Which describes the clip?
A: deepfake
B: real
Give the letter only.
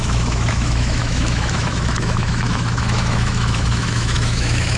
A